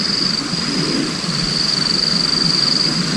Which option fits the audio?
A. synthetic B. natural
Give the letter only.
B